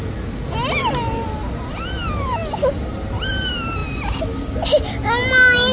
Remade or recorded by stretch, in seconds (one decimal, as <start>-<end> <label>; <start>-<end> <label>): 0.0-5.7 recorded